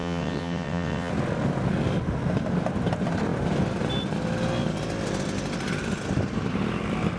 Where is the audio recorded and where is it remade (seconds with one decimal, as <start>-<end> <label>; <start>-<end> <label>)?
0.0-1.1 remade; 1.1-7.2 recorded